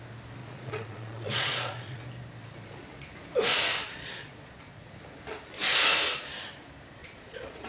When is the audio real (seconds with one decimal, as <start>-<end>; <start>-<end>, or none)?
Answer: 0.0-0.4; 2.0-3.8; 4.9-7.0